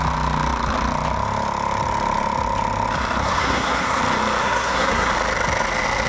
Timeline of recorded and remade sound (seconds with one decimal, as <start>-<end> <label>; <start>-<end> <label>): 0.0-3.2 recorded; 3.2-4.0 remade; 4.0-4.4 recorded; 4.4-5.1 remade; 5.1-6.1 recorded